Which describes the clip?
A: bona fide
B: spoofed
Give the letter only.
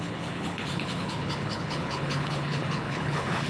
B